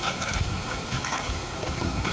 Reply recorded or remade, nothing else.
remade